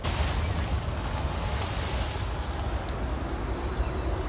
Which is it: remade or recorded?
recorded